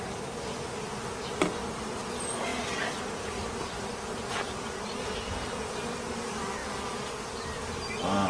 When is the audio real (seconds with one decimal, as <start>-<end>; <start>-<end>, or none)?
0.0-8.3